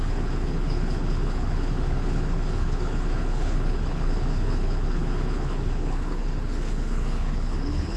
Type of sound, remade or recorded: remade